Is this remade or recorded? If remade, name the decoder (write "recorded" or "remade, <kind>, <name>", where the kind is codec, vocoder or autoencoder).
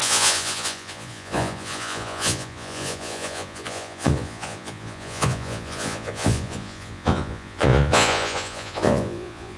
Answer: remade, vocoder, Vocos